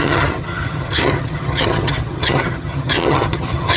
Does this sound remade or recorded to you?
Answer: remade